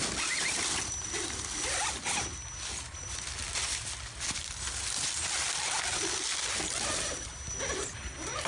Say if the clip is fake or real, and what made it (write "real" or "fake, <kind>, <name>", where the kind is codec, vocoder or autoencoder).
real